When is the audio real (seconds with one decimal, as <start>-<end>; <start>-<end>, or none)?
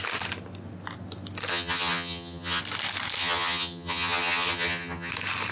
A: 0.0-1.5; 2.6-3.2; 5.1-5.5